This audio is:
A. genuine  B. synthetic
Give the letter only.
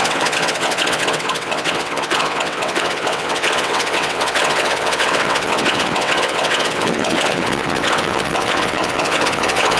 B